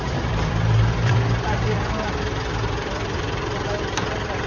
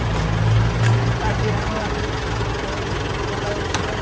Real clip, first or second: second